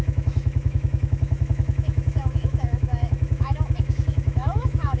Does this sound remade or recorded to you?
remade